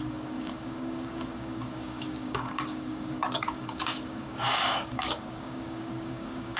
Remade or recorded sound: remade